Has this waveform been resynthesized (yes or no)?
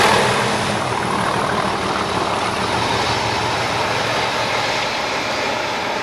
no